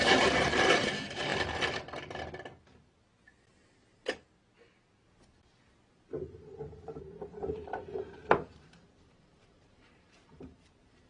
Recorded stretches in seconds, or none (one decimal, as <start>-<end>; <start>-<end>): 1.3-6.2